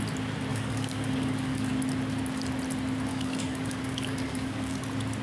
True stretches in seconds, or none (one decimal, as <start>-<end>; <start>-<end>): 0.0-0.5; 1.7-3.1; 4.8-5.2

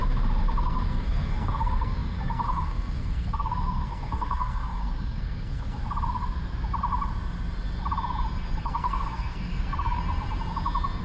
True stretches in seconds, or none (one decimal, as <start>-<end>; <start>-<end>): 0.0-0.6; 5.8-8.6; 10.0-11.0

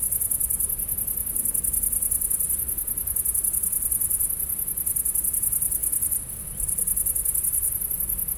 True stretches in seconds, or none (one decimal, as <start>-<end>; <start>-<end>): 0.0-8.4

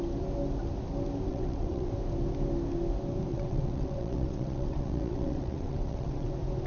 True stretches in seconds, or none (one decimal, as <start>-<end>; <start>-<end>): 0.0-1.3; 1.9-3.3; 6.3-6.7

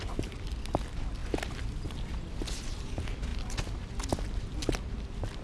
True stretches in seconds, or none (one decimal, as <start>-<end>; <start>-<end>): 3.3-4.1

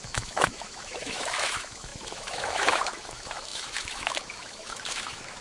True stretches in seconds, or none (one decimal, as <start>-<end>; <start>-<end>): none